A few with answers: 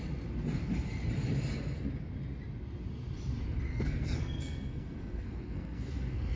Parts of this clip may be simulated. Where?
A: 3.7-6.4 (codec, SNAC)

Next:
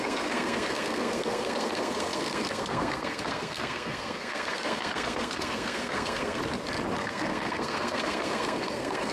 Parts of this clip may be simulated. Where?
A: 0.0-6.4 (codec, SNAC); 7.0-9.1